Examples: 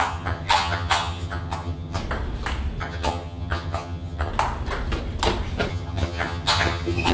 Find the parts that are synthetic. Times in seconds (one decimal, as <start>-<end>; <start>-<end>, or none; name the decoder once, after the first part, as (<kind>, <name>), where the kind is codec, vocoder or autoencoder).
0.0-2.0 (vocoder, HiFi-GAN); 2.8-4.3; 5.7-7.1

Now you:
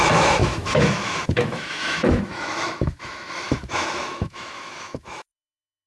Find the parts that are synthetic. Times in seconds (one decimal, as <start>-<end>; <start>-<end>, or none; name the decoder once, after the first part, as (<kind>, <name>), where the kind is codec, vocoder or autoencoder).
0.0-5.9 (autoencoder, DAC-VAE)

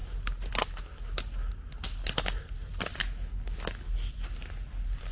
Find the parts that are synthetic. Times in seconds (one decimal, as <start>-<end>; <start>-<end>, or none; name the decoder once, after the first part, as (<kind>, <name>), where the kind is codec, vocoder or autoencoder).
none